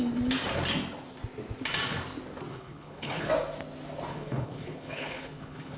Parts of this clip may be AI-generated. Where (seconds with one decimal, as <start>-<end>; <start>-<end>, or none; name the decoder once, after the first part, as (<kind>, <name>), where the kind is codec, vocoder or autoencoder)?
2.5-3.3 (codec, HILCodec); 4.1-5.8